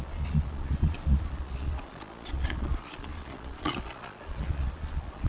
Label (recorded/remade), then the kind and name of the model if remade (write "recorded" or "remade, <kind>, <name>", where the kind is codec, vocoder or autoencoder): remade, vocoder, Vocos